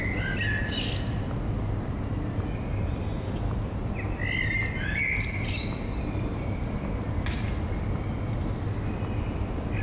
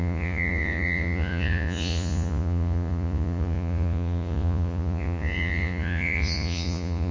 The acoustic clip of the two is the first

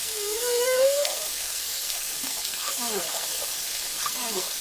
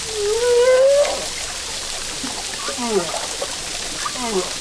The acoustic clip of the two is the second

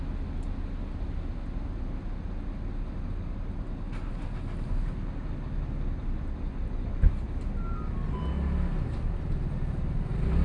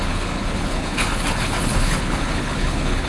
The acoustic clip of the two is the first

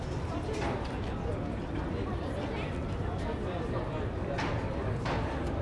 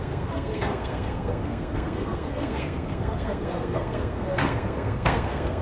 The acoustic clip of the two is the first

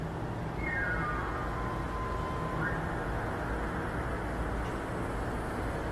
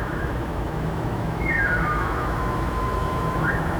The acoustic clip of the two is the first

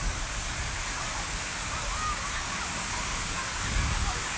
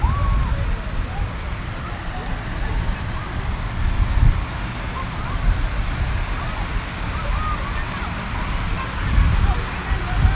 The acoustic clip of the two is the second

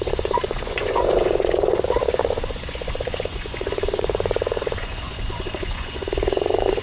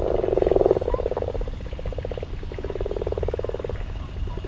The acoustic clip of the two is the second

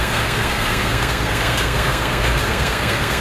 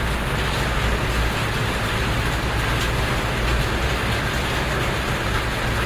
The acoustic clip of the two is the second